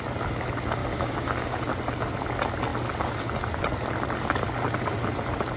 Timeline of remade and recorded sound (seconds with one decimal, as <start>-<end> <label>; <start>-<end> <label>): 0.0-0.8 recorded; 0.8-1.6 remade; 1.6-5.6 recorded